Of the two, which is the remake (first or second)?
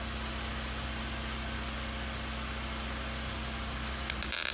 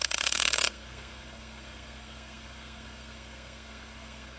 second